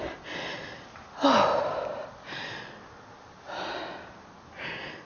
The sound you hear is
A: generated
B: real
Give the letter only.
B